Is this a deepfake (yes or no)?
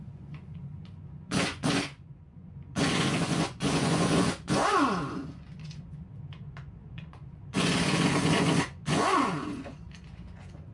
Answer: yes